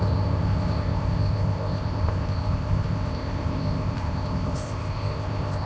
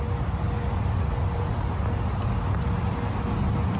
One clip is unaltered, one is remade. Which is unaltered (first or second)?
second